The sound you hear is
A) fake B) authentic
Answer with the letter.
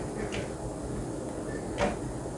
B